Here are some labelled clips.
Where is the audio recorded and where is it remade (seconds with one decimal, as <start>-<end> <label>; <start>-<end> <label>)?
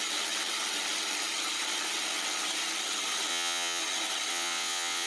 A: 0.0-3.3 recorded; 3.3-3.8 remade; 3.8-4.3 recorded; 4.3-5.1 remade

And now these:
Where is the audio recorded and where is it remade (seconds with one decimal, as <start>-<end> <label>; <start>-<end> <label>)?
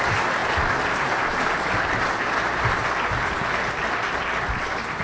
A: 0.0-5.0 recorded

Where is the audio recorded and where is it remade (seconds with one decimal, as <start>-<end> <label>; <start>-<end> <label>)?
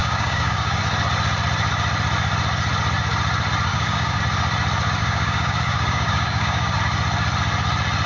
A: 0.0-0.8 remade; 0.8-3.7 recorded; 3.7-4.2 remade; 4.2-5.0 recorded; 5.0-6.8 remade; 6.8-8.1 recorded